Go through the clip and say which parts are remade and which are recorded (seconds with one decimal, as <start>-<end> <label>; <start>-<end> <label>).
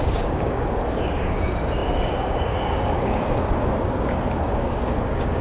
0.0-5.4 remade